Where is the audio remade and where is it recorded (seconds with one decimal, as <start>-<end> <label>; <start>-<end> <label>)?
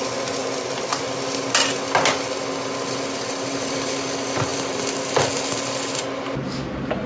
0.0-0.4 recorded; 0.4-1.0 remade; 1.0-7.1 recorded